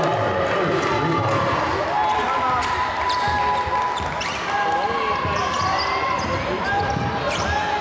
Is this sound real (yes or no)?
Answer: yes